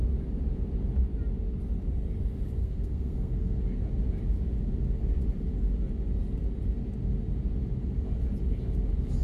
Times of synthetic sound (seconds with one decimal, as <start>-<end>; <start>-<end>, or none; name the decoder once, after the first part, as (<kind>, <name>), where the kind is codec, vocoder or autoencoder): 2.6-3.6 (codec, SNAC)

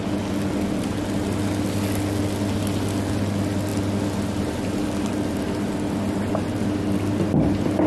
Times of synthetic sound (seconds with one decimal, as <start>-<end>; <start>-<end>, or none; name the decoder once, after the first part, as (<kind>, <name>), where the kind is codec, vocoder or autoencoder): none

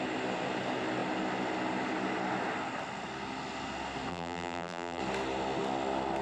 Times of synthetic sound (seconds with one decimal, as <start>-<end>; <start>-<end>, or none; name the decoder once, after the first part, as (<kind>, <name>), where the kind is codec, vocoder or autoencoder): 4.1-5.0 (vocoder, BigVGAN v2)